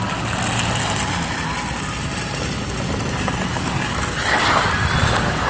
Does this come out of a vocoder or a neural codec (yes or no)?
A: no